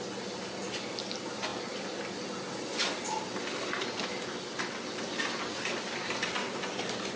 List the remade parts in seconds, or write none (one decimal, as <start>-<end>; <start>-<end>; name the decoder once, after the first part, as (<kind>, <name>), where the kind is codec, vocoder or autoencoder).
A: none